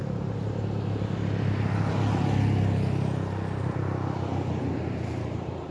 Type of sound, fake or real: real